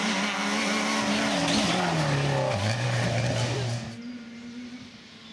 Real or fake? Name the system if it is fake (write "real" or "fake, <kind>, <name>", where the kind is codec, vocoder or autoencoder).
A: real